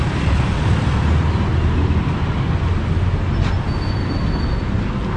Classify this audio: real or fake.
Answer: real